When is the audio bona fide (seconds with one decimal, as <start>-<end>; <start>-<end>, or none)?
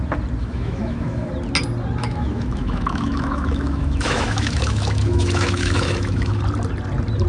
0.0-0.4; 1.3-2.0; 6.4-7.3